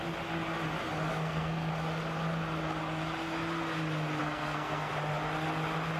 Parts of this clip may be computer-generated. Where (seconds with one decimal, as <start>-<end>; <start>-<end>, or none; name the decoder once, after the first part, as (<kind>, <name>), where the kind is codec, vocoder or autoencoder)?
1.1-1.7 (codec, SNAC); 4.2-4.9